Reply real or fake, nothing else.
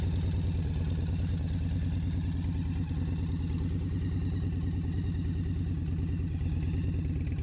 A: real